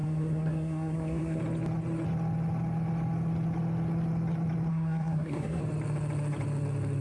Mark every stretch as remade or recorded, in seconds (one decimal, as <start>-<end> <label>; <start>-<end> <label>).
0.0-1.4 remade; 1.4-4.7 recorded; 4.7-5.6 remade; 5.6-7.0 recorded